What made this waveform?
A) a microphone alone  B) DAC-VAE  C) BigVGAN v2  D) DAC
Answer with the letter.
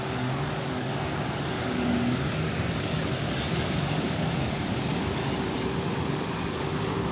D